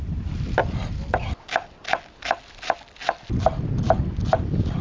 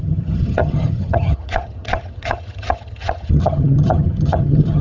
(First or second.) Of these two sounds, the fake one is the second